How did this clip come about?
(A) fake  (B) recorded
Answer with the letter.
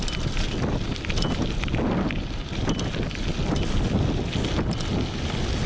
B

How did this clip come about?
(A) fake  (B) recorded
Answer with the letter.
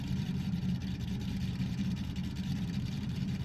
A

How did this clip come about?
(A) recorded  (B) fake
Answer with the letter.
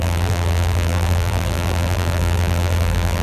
B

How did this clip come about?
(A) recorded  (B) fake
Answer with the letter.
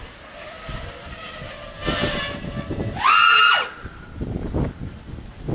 A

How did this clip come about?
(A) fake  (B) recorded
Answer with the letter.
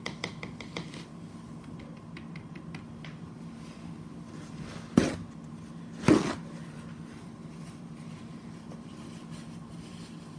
B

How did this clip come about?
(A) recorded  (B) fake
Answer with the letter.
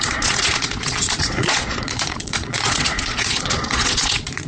B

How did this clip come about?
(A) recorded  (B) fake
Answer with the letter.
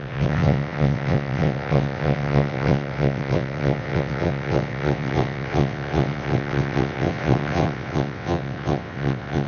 B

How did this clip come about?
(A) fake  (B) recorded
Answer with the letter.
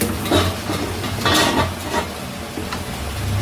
B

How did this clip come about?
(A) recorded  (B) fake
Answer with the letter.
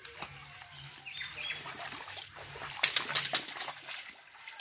A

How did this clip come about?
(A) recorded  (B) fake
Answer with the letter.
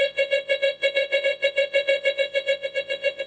B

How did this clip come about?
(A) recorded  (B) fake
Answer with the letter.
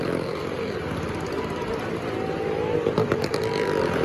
A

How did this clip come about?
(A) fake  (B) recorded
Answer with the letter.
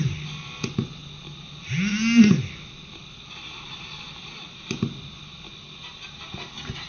B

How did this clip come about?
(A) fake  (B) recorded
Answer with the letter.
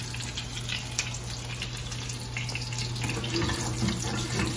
B